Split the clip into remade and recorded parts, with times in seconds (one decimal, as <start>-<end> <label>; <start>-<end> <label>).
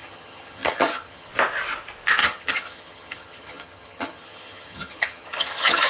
0.0-1.3 remade; 1.3-2.2 recorded; 2.2-5.9 remade